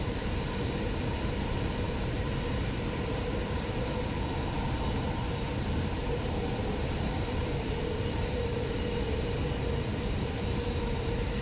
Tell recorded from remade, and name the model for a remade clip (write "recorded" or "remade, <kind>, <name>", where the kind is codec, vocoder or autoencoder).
remade, vocoder, BigVGAN v2